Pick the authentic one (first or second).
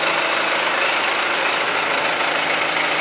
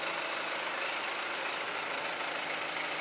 first